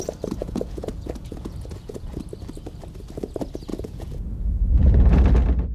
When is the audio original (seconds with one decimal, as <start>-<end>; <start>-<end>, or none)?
0.0-0.4; 2.2-3.7; 5.2-5.7